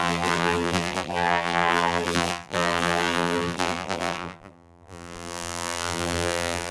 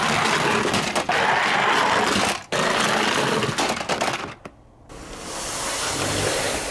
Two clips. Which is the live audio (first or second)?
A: second